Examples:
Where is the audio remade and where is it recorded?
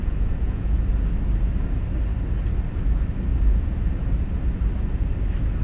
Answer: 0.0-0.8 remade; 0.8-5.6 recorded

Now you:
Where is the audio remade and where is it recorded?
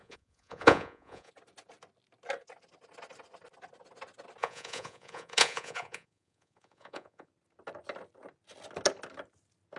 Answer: 0.0-1.3 remade; 1.3-4.4 recorded; 4.4-7.3 remade; 7.3-9.8 recorded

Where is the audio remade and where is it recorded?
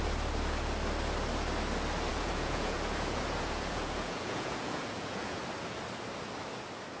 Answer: 0.0-2.1 recorded; 2.1-5.4 remade; 5.4-7.0 recorded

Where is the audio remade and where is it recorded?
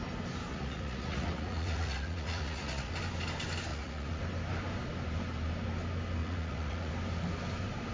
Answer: 0.0-0.5 recorded; 0.5-2.9 remade; 2.9-3.7 recorded; 3.7-4.2 remade; 4.2-6.2 recorded; 6.2-6.9 remade; 6.9-7.9 recorded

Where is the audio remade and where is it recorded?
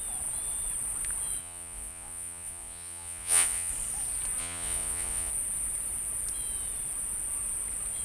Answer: 0.0-1.4 recorded; 1.4-3.7 remade; 3.7-4.4 recorded; 4.4-5.3 remade; 5.3-8.0 recorded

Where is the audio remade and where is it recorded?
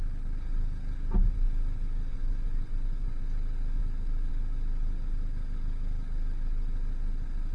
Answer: 0.0-2.1 recorded; 2.1-3.2 remade; 3.2-7.5 recorded